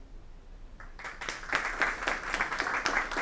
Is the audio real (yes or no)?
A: yes